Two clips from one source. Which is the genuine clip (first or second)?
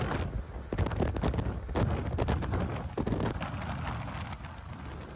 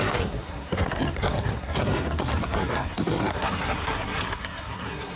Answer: first